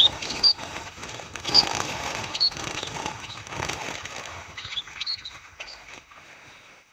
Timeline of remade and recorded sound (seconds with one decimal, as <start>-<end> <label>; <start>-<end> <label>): 0.0-6.9 remade